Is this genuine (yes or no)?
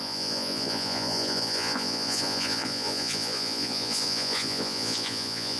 no